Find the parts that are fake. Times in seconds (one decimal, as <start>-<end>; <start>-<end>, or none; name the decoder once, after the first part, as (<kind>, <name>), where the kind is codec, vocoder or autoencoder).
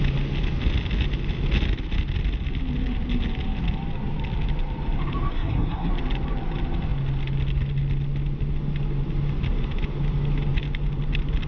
5.3-5.9 (codec, SNAC)